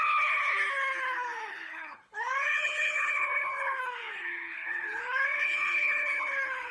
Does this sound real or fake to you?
fake